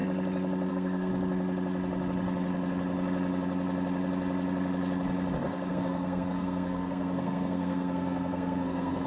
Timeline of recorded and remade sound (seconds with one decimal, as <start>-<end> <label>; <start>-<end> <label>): 0.0-0.7 recorded; 0.7-1.1 remade; 1.1-5.7 recorded; 5.7-9.1 remade